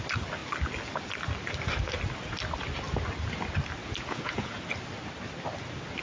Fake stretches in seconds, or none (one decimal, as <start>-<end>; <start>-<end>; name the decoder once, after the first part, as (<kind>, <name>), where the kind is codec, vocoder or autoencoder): 3.8-4.6 (vocoder, Vocos)